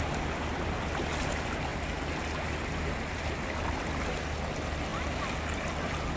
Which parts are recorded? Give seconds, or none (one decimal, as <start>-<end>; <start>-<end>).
0.0-6.2